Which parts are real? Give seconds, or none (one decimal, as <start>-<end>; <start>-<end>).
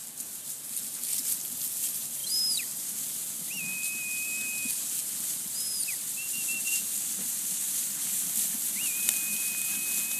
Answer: 0.0-2.2; 4.5-5.0; 9.5-10.2